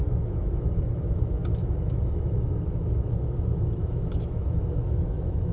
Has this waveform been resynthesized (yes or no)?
yes